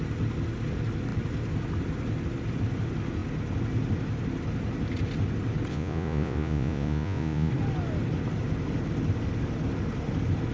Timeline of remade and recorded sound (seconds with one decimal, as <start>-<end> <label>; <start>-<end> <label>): 0.0-5.7 recorded; 5.7-7.5 remade; 7.5-10.5 recorded